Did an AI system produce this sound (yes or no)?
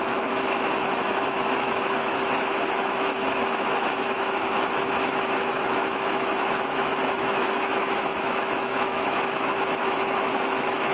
yes